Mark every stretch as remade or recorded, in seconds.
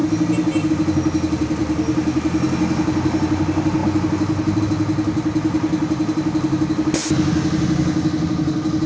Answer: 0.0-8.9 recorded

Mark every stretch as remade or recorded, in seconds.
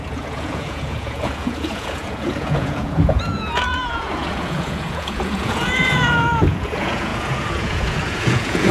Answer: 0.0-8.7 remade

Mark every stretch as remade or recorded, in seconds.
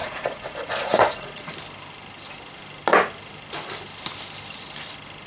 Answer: 0.0-1.5 remade; 1.5-5.3 recorded